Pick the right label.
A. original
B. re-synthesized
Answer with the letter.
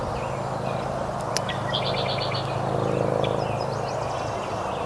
A